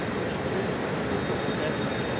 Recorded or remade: recorded